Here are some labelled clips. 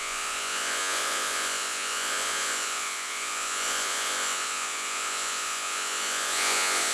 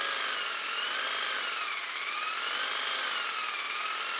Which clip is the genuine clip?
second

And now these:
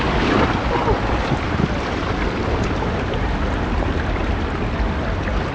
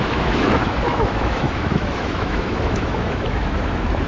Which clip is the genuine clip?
first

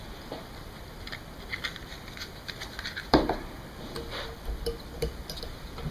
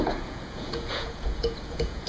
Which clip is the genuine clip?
first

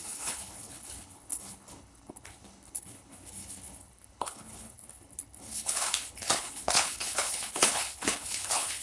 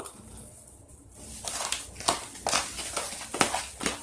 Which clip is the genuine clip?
second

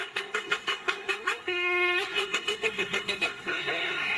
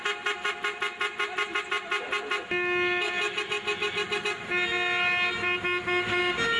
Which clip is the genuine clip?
second